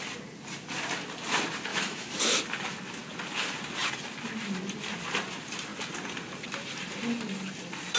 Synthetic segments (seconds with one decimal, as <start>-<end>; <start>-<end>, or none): 1.7-2.2